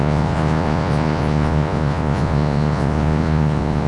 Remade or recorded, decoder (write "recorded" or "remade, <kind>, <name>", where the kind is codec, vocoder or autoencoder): remade, vocoder, Vocos